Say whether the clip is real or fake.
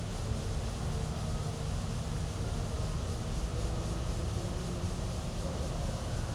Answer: real